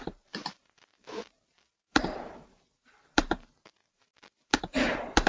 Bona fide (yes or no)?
no